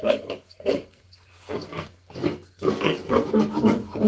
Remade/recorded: remade